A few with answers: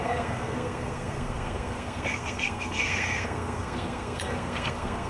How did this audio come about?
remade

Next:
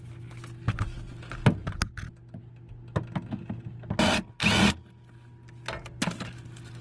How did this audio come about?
recorded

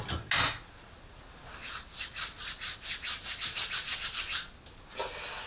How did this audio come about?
recorded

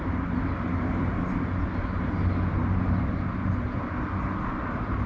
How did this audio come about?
recorded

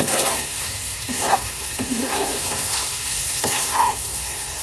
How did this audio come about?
remade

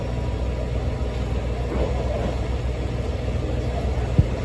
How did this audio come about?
recorded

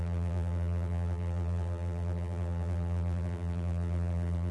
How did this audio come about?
remade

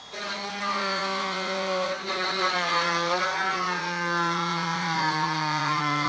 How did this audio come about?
remade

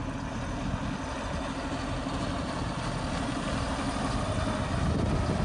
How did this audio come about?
recorded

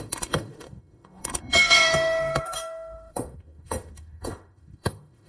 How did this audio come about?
remade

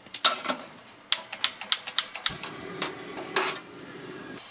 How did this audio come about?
recorded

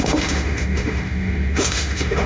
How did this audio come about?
remade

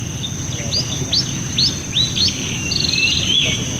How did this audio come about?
recorded